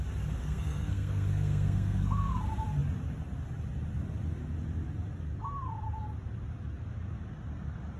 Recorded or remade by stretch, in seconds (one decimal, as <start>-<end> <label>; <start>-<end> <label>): 0.0-0.4 recorded; 0.4-2.4 remade; 2.4-8.0 recorded